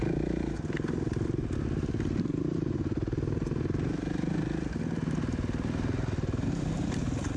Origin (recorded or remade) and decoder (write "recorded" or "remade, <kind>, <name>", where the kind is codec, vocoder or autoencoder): remade, vocoder, BigVGAN v2